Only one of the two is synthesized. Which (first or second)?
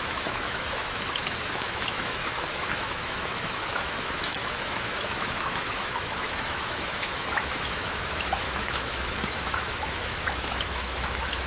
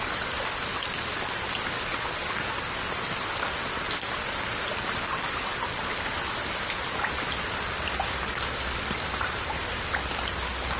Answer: first